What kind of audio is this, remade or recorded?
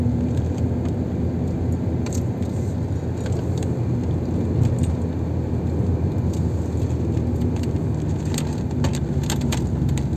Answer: recorded